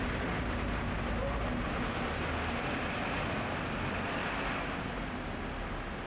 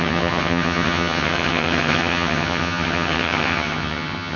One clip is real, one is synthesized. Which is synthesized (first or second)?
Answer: second